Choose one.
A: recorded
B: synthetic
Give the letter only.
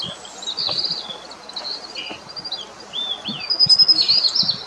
A